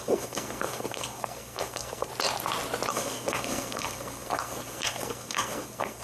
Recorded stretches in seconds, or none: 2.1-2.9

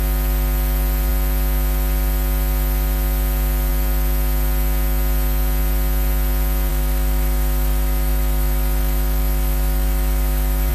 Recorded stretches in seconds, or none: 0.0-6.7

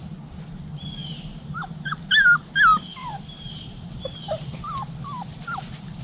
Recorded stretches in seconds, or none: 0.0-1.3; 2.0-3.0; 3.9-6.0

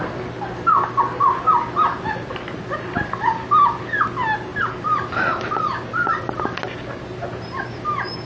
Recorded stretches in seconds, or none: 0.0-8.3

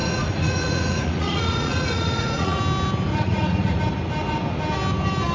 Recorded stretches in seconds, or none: 2.6-3.1; 3.8-5.3

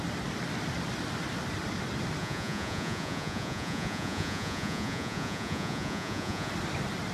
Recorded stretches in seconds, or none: 0.0-2.2; 6.5-7.1

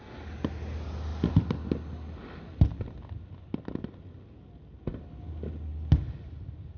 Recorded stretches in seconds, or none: 0.0-6.8